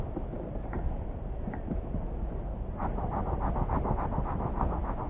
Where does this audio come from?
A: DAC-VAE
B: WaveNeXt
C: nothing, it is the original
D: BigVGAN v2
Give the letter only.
C